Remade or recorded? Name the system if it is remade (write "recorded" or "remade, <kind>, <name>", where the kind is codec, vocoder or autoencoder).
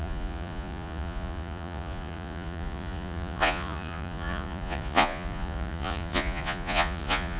remade, vocoder, Vocos